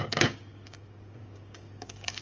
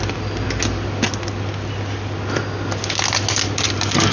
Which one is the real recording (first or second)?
second